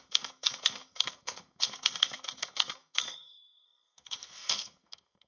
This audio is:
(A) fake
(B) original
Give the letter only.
A